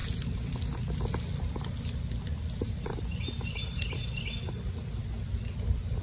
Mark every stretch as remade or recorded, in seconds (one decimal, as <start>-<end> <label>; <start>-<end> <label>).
0.0-6.0 recorded